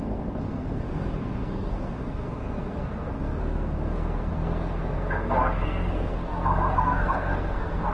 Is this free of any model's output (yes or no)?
no